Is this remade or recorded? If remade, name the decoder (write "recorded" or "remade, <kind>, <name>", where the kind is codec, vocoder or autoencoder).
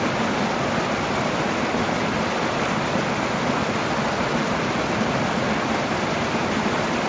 recorded